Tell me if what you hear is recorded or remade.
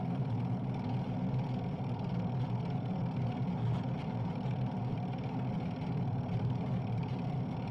recorded